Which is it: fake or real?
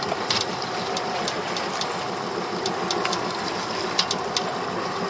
real